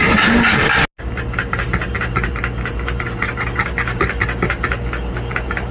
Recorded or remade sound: recorded